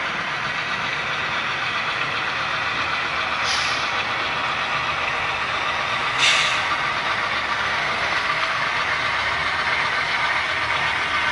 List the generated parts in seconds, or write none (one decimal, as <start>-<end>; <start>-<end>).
7.5-8.6